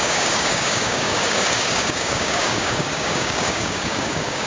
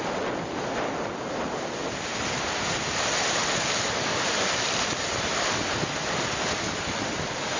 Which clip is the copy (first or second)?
first